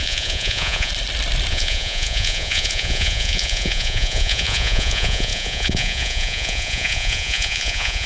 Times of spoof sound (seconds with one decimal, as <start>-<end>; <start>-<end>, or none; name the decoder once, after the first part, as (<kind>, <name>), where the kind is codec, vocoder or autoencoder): 0.0-0.9 (vocoder, Vocos); 1.5-8.1